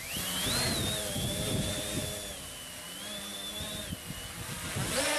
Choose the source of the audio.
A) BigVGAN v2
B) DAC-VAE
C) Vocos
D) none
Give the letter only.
D